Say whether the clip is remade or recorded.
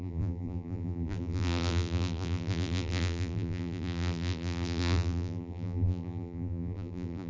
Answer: remade